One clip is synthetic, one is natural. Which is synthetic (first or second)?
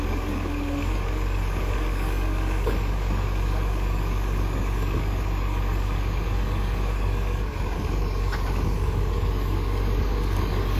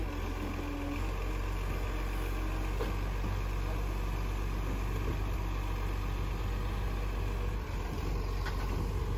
first